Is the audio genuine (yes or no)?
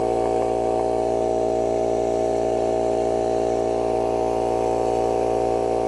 no